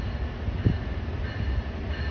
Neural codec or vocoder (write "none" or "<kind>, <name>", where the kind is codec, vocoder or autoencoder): none